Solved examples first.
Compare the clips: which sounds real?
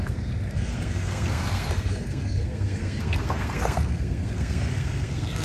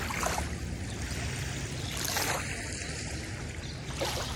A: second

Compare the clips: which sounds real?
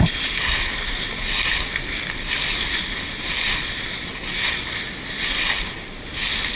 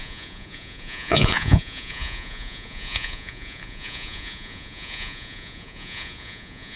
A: first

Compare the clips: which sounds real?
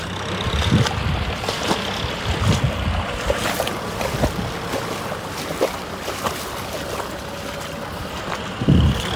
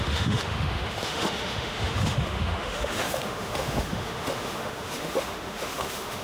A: first